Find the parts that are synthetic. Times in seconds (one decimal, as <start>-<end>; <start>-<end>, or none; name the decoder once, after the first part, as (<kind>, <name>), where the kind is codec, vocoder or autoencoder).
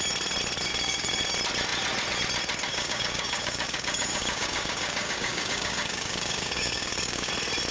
0.7-1.2 (codec, DAC); 2.7-7.3